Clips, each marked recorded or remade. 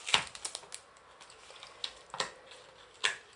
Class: recorded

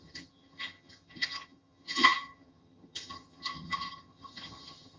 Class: remade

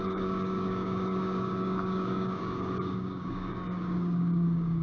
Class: remade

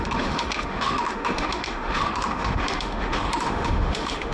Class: remade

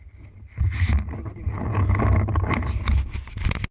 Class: recorded